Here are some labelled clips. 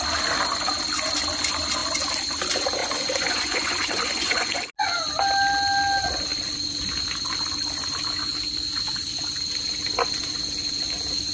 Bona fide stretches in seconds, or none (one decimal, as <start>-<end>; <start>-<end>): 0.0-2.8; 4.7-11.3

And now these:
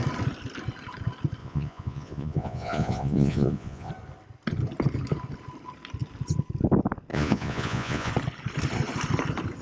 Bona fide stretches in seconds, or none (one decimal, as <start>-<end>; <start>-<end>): 0.0-1.4; 3.9-7.1; 8.1-9.6

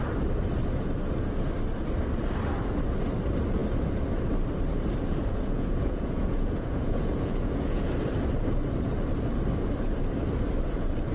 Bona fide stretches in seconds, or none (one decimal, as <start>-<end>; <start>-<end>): 0.0-5.2; 7.9-11.1

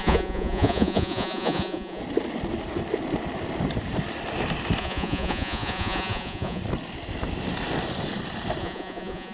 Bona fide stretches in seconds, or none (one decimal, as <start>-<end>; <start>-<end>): 2.0-4.8; 6.6-8.6